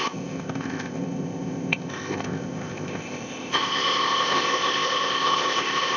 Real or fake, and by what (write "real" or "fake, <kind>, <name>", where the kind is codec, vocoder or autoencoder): fake, codec, ZipCodec